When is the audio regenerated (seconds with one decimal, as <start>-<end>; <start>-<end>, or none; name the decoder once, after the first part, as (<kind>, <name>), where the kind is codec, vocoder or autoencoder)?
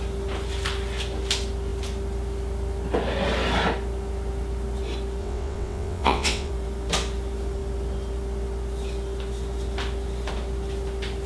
5.2-6.5 (vocoder, WaveNeXt)